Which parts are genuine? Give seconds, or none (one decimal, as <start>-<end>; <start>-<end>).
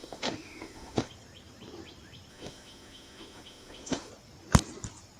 1.1-2.3; 4.1-5.2